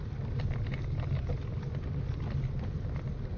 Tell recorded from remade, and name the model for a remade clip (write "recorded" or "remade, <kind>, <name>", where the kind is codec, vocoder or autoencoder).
recorded